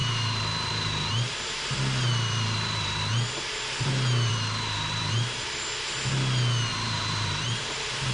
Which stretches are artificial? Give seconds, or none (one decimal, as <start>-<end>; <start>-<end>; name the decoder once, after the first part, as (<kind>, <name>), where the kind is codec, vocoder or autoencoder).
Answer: 0.0-3.0 (vocoder, BigVGAN v2); 4.3-5.7; 6.7-8.1